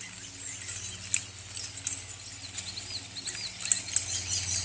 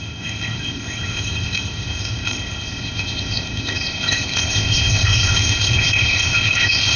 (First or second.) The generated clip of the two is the second